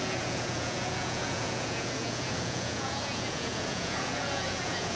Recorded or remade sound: remade